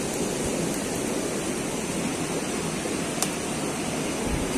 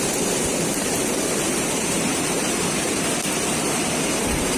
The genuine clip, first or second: first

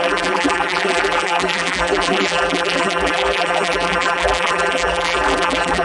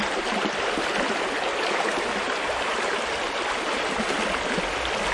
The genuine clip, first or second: second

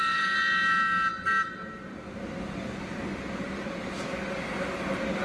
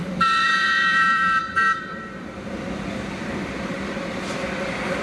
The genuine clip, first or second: first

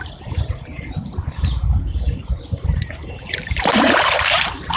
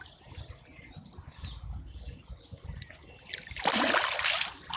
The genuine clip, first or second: second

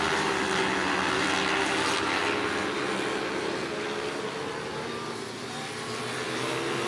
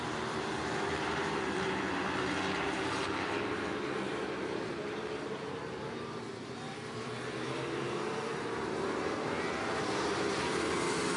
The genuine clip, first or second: first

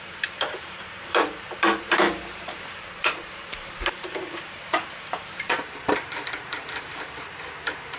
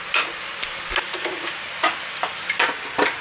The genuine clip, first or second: second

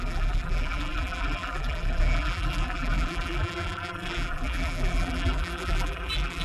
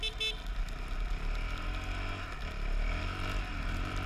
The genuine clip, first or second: second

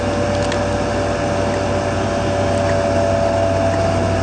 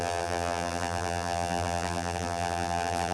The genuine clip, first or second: first